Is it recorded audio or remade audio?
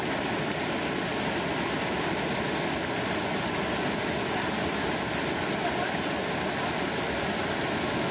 recorded